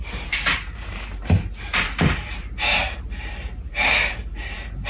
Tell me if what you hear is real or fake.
fake